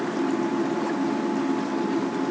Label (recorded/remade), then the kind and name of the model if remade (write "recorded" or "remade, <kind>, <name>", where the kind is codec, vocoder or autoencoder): recorded